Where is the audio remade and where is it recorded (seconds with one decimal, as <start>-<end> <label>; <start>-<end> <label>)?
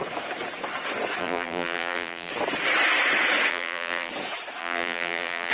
0.0-1.2 recorded; 1.2-2.3 remade; 2.3-3.5 recorded; 3.5-4.1 remade; 4.1-4.6 recorded; 4.6-5.5 remade